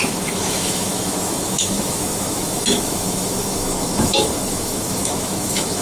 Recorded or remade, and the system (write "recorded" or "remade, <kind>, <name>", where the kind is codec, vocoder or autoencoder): remade, autoencoder, DAC-VAE